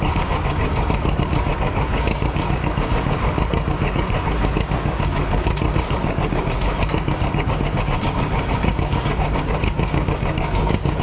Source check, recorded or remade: remade